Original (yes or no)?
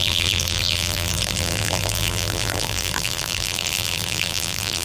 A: no